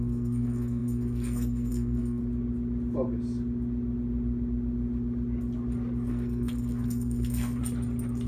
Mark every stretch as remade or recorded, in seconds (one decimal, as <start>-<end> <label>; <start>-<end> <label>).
0.0-2.2 remade; 2.2-6.1 recorded; 6.1-7.6 remade; 7.6-8.3 recorded